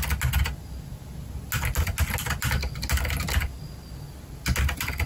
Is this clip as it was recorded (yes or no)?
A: yes